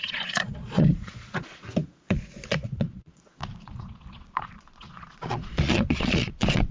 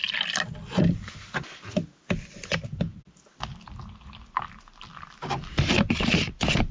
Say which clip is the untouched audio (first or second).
second